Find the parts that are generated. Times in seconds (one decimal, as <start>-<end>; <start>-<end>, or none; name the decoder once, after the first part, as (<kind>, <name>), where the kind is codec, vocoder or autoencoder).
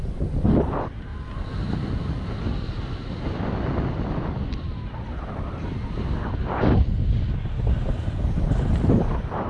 0.0-1.1 (vocoder, BigVGAN v2); 5.9-9.5